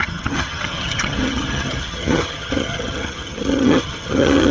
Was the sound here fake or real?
fake